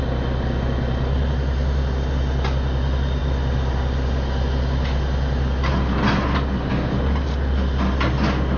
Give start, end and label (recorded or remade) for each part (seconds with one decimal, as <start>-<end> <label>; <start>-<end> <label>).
0.0-8.6 recorded